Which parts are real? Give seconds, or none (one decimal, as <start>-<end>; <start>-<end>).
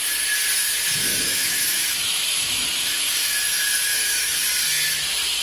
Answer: 0.0-1.1; 4.3-5.4